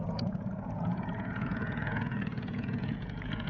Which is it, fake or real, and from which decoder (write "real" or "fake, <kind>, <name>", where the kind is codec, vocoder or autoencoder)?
fake, vocoder, Vocos